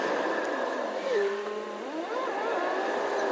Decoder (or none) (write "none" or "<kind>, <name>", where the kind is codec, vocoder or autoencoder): none